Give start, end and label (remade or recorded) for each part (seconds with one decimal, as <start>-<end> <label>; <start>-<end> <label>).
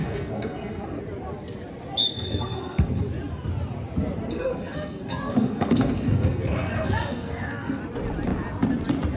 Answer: 0.0-1.0 remade; 1.0-2.1 recorded; 2.1-3.0 remade; 3.0-4.3 recorded; 4.3-7.8 remade; 7.8-9.2 recorded